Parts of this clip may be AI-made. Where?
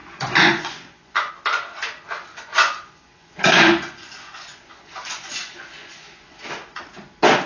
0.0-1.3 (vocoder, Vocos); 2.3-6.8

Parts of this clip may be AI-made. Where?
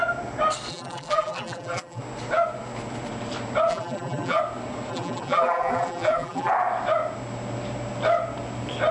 0.7-2.0 (vocoder, BigVGAN v2); 3.7-4.4; 4.9-6.5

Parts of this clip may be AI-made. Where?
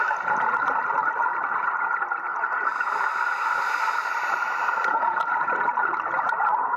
0.0-2.3 (vocoder, BigVGAN v2); 4.9-6.8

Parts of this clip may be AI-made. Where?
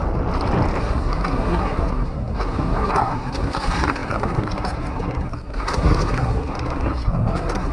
0.8-7.7 (codec, SNAC)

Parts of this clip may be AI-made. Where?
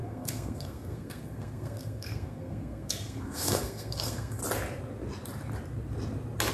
0.0-4.4 (codec, SNAC)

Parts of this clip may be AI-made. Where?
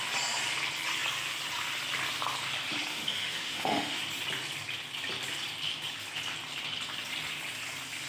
2.9-4.0 (autoencoder, DAC-VAE)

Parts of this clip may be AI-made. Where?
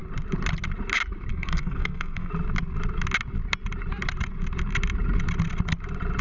1.3-2.3 (codec, SNAC)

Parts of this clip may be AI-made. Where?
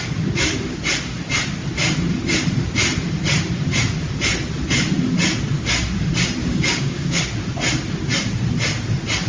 6.4-7.2 (codec, DAC)